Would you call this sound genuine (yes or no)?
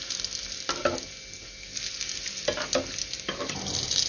yes